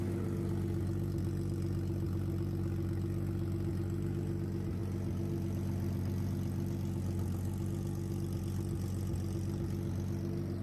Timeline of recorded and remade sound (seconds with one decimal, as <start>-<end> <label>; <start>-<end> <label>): 0.0-10.6 recorded